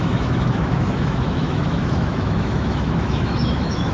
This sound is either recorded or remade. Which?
remade